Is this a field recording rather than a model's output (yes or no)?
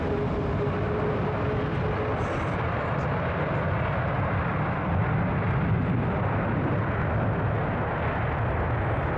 yes